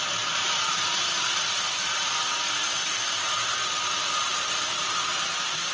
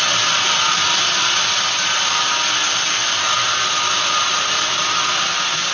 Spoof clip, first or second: first